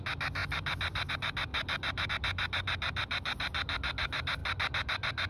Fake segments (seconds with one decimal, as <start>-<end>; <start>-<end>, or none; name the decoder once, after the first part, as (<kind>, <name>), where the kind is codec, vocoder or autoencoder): none